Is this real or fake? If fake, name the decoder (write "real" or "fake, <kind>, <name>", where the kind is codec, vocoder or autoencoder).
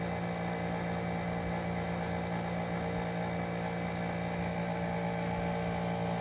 real